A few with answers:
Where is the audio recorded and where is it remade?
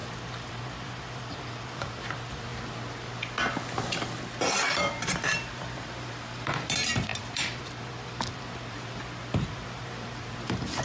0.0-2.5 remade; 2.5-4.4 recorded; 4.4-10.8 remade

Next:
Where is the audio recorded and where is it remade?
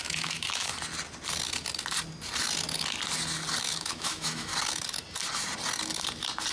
0.0-0.7 remade; 0.7-3.6 recorded; 3.6-4.5 remade; 4.5-6.5 recorded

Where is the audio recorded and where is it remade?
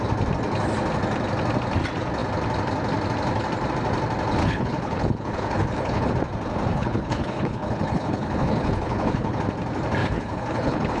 0.0-4.4 recorded; 4.4-6.1 remade; 6.1-6.7 recorded; 6.7-9.4 remade; 9.4-10.0 recorded; 10.0-11.0 remade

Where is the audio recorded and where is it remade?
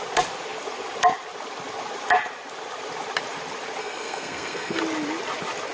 0.0-3.8 recorded; 3.8-4.8 remade; 4.8-5.7 recorded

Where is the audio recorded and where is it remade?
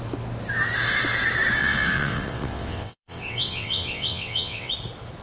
0.0-1.6 recorded; 1.6-4.7 remade; 4.7-5.2 recorded